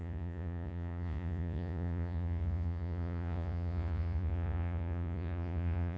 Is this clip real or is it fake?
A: fake